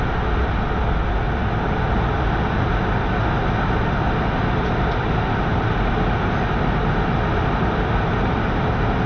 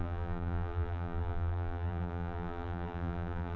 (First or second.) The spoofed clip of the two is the second